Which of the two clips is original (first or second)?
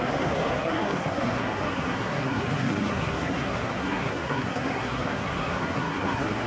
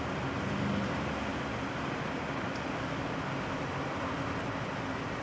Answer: second